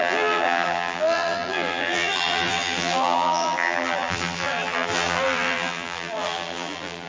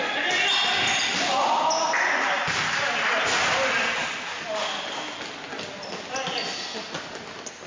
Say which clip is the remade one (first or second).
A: first